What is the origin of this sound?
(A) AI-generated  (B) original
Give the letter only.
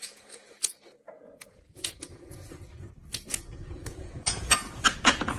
A